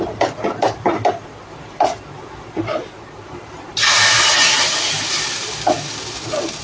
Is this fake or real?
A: fake